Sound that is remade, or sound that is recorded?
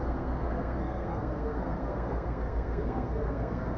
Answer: remade